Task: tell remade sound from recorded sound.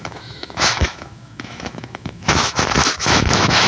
remade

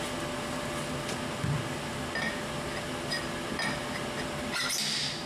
recorded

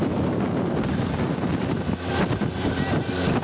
recorded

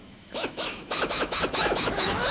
remade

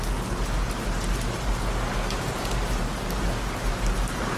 recorded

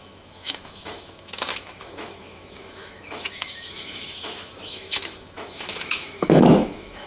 remade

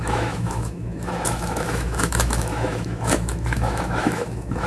remade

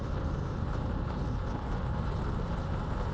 recorded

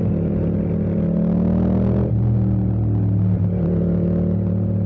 recorded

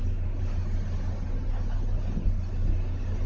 recorded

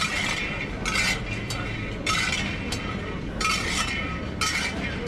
recorded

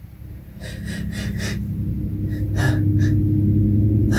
recorded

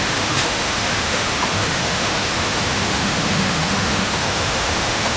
remade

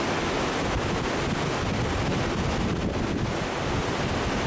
recorded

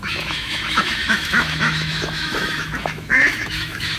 remade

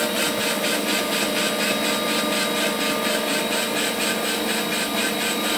recorded